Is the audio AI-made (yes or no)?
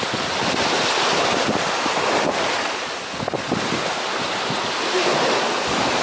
no